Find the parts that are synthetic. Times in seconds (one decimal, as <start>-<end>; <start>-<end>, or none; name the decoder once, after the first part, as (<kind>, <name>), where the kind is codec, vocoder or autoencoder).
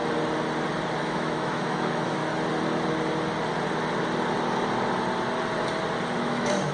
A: 1.0-2.2 (autoencoder, DAC-VAE); 6.2-6.7